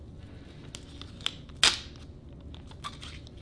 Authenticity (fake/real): real